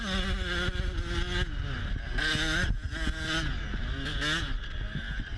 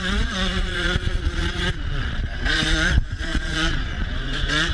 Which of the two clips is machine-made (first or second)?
second